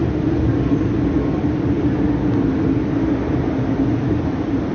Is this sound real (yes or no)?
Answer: yes